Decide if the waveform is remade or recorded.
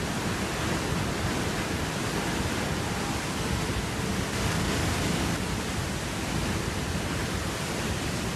recorded